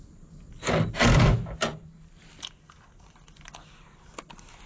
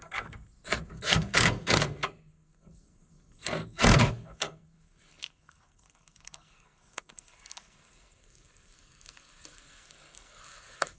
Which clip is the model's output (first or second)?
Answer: second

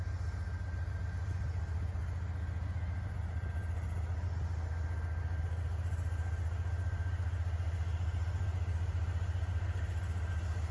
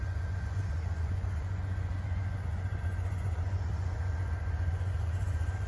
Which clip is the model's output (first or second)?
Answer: second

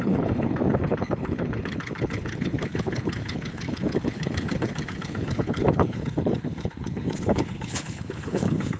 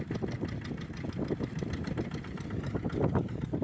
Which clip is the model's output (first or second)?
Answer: first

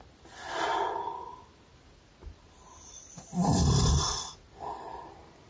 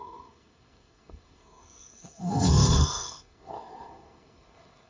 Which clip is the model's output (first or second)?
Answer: second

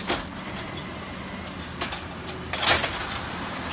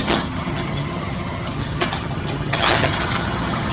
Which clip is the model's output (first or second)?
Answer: second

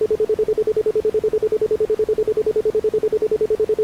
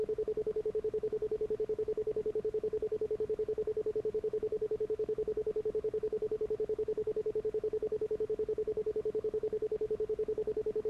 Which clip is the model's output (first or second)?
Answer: second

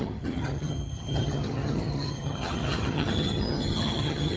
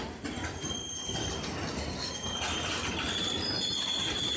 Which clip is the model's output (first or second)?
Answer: first